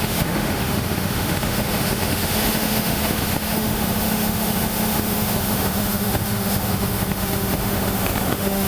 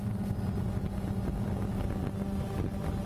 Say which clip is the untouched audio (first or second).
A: second